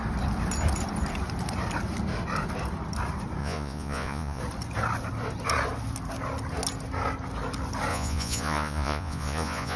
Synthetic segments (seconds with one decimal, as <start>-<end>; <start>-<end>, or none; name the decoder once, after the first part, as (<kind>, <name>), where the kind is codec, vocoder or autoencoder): 3.4-4.4 (vocoder, Vocos); 7.9-9.8